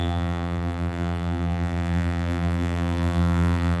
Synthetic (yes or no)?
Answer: yes